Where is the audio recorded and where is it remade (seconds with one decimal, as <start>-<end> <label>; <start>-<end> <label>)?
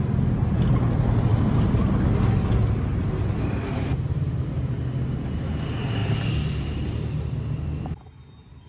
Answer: 0.0-6.0 recorded; 6.0-6.9 remade; 6.9-8.7 recorded